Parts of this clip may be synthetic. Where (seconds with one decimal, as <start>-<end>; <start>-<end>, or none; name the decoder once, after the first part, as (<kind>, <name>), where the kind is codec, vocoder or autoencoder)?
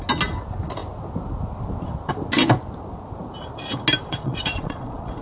4.1-5.2 (vocoder, Vocos)